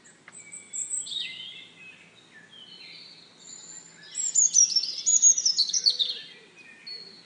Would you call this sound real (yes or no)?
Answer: yes